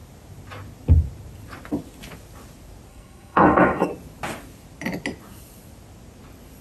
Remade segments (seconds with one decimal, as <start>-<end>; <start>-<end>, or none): 2.9-3.9